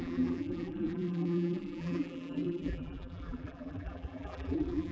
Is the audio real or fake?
fake